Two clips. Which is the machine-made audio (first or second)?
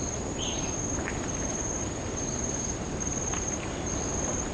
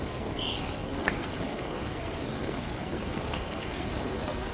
second